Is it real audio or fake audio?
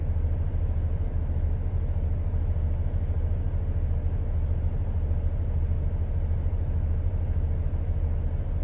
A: real